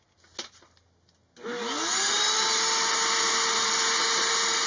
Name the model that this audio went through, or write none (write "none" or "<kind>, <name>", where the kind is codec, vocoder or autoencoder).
none